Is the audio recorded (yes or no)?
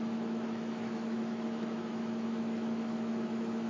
no